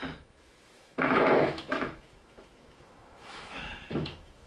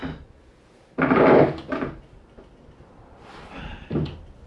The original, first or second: second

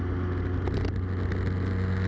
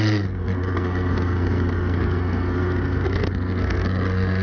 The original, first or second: first